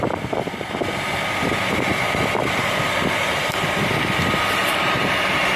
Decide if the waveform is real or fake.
fake